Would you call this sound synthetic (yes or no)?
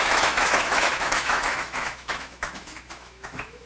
yes